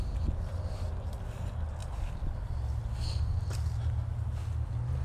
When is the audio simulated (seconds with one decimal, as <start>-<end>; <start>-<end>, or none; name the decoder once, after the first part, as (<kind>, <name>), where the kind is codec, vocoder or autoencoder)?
none